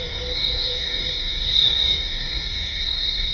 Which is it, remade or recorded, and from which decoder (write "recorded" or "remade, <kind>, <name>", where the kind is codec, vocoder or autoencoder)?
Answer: remade, codec, DAC